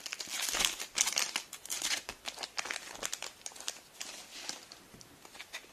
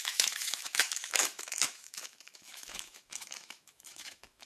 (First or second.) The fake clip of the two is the second